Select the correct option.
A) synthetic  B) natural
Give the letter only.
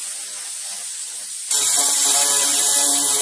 A